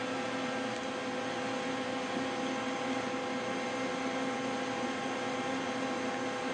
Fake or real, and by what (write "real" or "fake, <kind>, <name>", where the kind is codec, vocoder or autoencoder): real